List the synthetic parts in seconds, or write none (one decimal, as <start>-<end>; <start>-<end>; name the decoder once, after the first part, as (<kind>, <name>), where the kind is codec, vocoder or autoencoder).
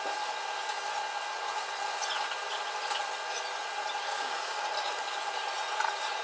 4.1-4.6 (codec, DAC)